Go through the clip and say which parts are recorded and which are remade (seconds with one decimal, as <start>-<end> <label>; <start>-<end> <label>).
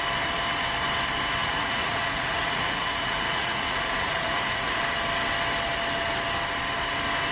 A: 0.0-1.4 recorded; 1.4-4.8 remade; 4.8-7.3 recorded